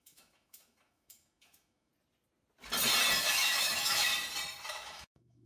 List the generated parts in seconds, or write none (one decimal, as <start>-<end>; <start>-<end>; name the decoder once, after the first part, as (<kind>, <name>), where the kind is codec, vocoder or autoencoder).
0.0-1.9 (autoencoder, DAC-VAE); 3.2-4.1; 4.7-5.5